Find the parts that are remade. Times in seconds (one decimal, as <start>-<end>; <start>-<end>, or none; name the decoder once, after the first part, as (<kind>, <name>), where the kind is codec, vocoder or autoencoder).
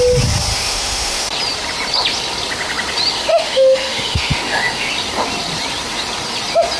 0.5-1.3 (autoencoder, DAC-VAE); 3.3-4.9